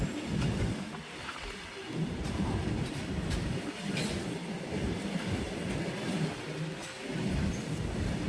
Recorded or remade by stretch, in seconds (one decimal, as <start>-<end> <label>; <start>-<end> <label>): 0.0-1.8 recorded; 1.8-5.8 remade; 5.8-7.1 recorded; 7.1-8.3 remade